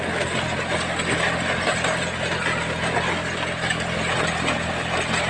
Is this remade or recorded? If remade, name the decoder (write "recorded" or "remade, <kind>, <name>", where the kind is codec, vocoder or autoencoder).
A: recorded